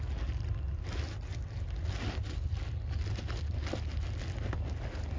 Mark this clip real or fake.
real